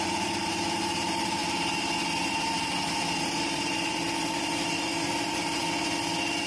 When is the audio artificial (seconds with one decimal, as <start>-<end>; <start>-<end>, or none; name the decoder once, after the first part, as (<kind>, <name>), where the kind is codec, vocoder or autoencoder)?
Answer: 0.0-1.4 (vocoder, BigVGAN v2); 3.2-5.6